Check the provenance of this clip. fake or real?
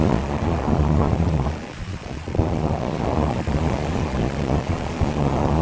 fake